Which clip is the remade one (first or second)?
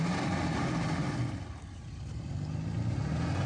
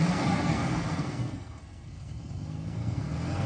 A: second